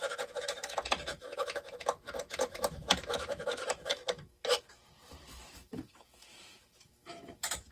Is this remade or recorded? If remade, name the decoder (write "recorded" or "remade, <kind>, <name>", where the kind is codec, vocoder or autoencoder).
remade, autoencoder, DAC-VAE